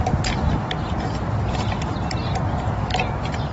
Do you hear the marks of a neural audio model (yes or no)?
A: no